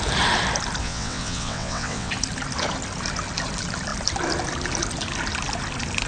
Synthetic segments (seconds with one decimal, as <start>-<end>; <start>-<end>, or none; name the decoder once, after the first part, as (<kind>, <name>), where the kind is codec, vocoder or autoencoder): 0.8-2.1 (vocoder, WaveNeXt)